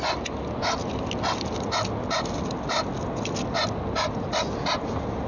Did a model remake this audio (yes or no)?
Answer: no